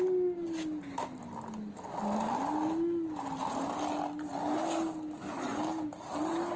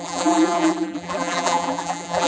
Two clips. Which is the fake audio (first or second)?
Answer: second